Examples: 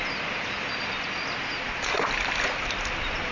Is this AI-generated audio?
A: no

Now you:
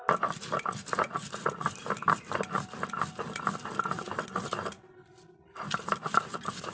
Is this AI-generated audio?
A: yes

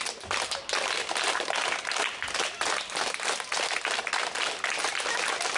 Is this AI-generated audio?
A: no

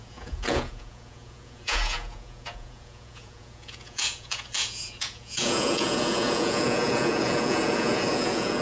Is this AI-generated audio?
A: yes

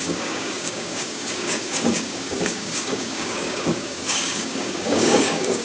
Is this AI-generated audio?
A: yes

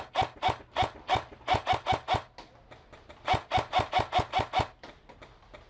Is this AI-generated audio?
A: no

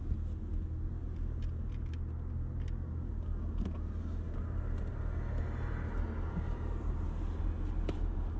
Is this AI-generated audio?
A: no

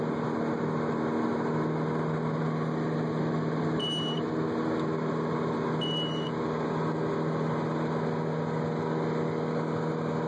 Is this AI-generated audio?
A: no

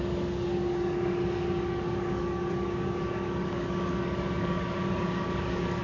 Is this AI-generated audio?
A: yes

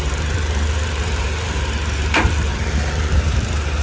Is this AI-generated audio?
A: yes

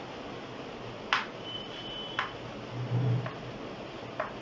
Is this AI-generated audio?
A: no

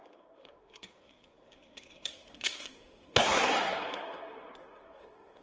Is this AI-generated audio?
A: yes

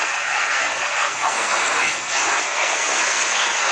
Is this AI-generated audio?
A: yes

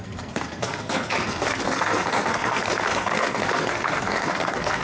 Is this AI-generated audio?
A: yes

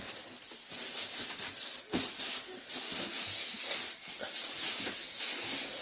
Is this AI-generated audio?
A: no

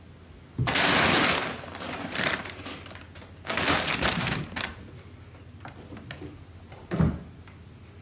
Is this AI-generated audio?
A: no